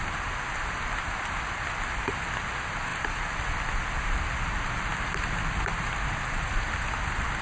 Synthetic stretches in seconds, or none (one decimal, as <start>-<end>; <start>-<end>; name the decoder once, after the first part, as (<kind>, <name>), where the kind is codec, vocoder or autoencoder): none